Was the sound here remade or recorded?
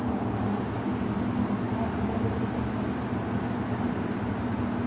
recorded